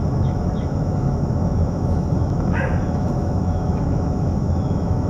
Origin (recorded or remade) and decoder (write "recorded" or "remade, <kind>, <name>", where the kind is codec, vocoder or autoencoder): remade, autoencoder, DAC-VAE